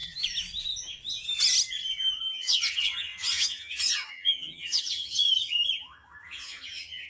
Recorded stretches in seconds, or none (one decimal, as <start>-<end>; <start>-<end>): 0.0-2.2